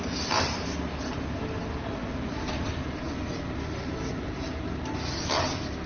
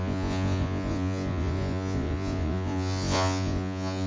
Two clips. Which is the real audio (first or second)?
first